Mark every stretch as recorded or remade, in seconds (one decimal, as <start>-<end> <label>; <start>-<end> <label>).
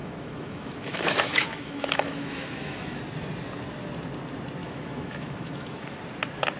0.0-3.0 remade; 3.0-4.6 recorded; 4.6-6.0 remade; 6.0-6.6 recorded